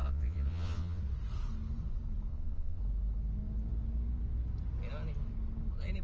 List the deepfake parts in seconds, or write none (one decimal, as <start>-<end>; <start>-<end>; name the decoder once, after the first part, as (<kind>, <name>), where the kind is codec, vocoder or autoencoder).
0.0-1.0 (vocoder, Vocos); 2.3-2.8